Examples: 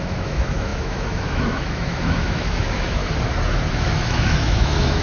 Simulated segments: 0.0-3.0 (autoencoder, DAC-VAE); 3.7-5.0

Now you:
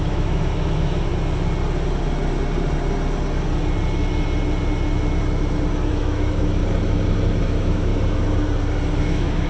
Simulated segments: 0.0-1.1 (autoencoder, DAC-VAE); 5.9-6.6; 7.4-7.9; 9.0-9.5

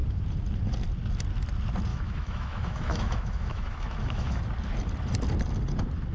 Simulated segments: 1.9-4.4 (autoencoder, DAC-VAE)

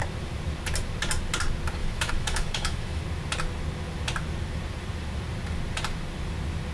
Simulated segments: 1.8-3.0 (autoencoder, DAC-VAE)

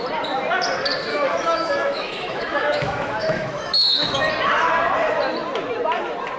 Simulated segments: 1.1-4.3 (autoencoder, DAC-VAE)

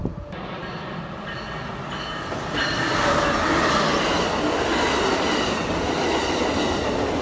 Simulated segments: none

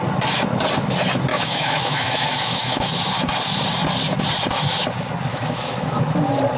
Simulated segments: 1.3-2.9 (autoencoder, DAC-VAE); 5.3-6.0